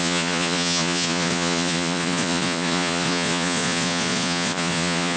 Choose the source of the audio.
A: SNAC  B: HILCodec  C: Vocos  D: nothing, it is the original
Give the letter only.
C